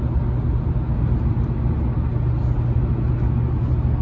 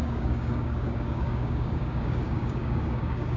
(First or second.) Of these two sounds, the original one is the first